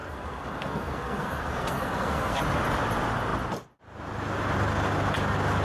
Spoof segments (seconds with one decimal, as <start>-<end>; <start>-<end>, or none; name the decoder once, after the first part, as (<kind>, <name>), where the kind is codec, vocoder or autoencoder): 0.0-2.4 (codec, SNAC)